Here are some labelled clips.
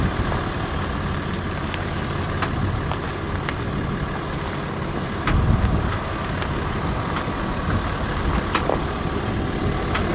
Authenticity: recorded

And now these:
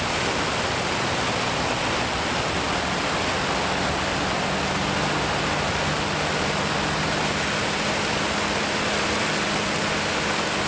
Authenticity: recorded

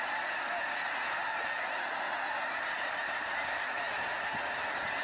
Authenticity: recorded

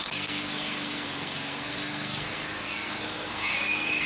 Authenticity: remade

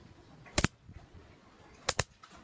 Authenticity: remade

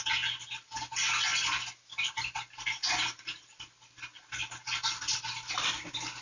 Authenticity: recorded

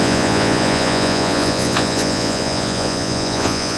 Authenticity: remade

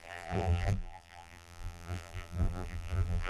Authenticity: remade